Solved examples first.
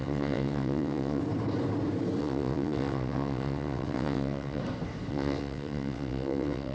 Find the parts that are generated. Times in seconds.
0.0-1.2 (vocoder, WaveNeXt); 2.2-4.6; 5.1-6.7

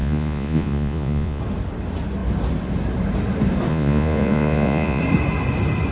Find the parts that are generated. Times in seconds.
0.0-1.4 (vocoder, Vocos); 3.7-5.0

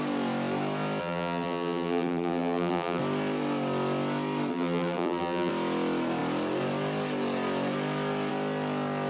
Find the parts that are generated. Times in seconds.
1.0-3.0 (vocoder, BigVGAN v2); 4.5-5.5